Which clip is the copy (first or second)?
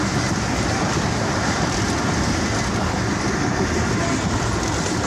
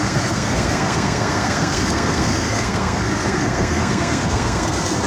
second